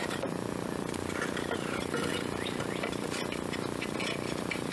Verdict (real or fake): real